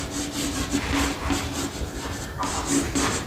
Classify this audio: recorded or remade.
recorded